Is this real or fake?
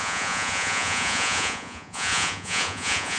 fake